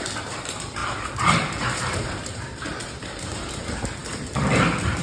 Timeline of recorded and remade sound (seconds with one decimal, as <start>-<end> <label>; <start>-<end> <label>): 0.0-0.8 recorded; 0.8-3.6 remade; 3.6-5.0 recorded